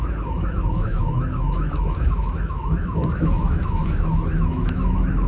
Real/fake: fake